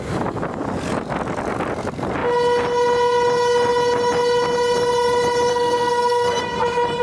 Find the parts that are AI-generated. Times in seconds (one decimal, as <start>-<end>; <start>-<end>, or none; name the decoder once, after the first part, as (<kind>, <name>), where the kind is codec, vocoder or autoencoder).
5.5-6.4 (codec, SNAC)